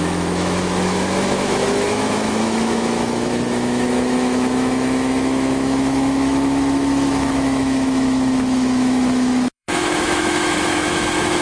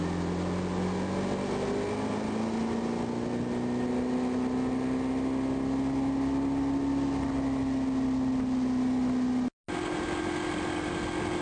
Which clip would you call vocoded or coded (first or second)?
first